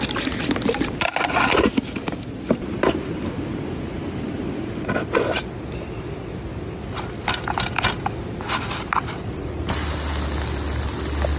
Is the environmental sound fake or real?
real